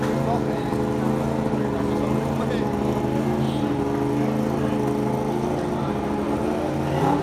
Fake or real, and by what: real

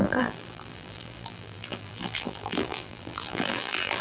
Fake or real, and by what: fake, vocoder, BigVGAN v2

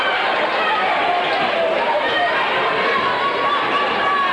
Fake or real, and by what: real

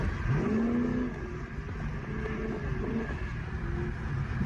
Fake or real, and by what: real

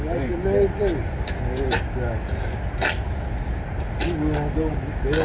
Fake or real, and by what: real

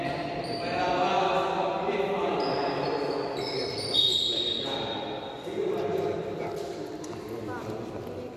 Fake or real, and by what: real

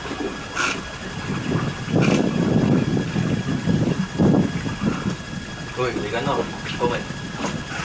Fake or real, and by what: real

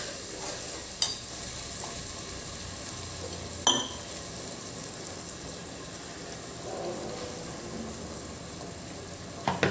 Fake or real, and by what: real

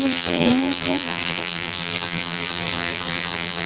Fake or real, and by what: fake, vocoder, BigVGAN v2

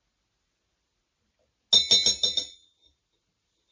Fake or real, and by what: real